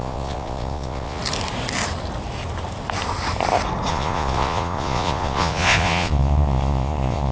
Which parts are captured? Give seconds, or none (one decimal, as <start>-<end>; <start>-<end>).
1.2-3.9